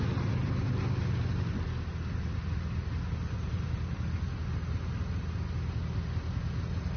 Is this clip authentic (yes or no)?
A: yes